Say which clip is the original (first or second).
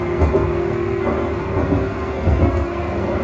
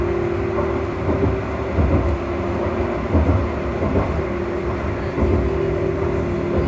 second